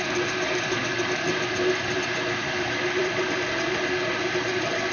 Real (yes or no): no